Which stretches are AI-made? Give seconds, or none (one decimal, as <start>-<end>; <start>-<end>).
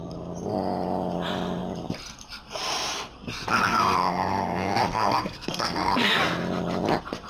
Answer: 3.6-6.2